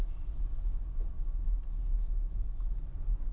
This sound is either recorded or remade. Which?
recorded